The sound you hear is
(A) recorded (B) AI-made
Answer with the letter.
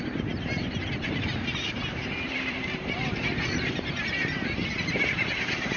B